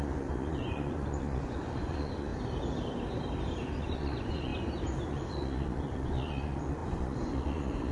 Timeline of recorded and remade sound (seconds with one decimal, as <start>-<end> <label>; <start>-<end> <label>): 0.0-2.3 remade; 2.3-3.8 recorded; 3.8-4.5 remade; 4.5-5.1 recorded; 5.1-7.9 remade